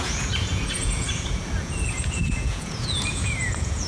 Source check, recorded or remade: remade